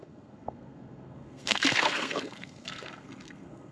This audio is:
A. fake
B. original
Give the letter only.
A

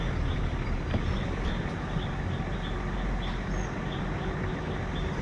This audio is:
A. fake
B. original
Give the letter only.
B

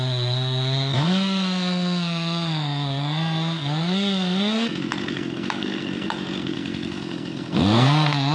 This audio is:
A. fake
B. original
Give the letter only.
A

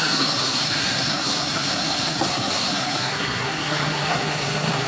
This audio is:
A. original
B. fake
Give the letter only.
B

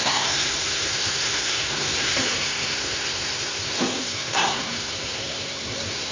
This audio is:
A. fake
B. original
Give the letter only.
A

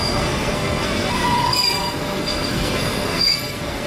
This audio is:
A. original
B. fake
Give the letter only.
B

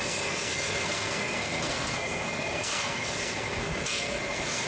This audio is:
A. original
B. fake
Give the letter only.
B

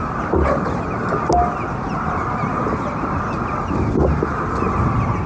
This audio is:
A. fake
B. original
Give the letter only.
B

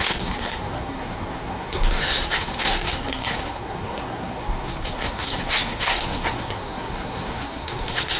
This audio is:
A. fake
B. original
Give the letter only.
A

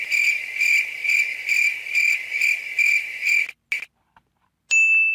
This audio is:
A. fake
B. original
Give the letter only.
B